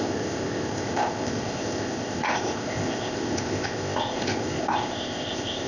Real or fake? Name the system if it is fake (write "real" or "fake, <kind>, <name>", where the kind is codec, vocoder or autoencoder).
fake, codec, ZipCodec